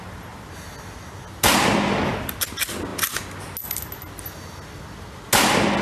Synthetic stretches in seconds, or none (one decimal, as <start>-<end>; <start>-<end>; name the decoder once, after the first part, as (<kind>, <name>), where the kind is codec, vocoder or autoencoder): none